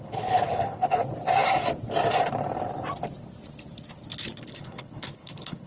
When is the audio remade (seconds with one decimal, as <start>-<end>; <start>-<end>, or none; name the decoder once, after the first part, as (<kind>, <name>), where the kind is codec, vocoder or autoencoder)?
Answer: 0.0-1.0 (codec, HILCodec); 4.4-5.7